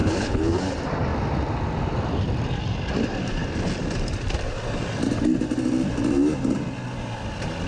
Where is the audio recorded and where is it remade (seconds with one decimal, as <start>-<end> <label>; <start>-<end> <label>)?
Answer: 0.0-0.6 remade; 0.6-7.7 recorded